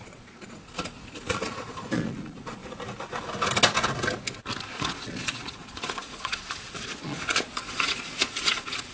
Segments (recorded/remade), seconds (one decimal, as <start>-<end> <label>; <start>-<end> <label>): 0.0-2.6 remade; 2.6-4.7 recorded; 4.7-8.9 remade